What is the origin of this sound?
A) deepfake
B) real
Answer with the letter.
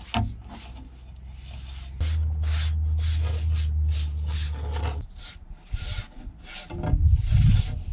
B